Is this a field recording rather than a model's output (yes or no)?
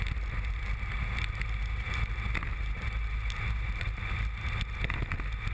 yes